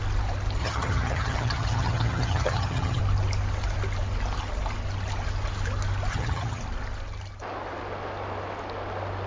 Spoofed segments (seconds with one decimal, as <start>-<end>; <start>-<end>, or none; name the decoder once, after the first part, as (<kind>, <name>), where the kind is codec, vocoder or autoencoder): 0.6-3.0 (vocoder, HiFi-GAN); 6.1-6.6